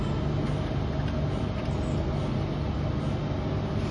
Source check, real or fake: real